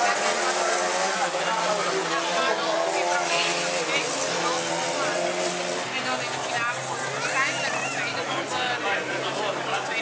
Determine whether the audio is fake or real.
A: real